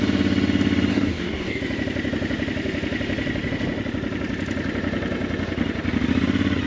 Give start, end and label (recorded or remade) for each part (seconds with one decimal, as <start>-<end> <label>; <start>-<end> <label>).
0.0-0.9 recorded; 0.9-1.6 remade; 1.6-6.7 recorded